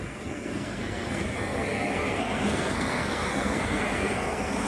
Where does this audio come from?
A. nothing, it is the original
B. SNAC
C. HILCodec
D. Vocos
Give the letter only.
B